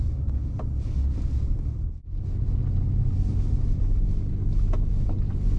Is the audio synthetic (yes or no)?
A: no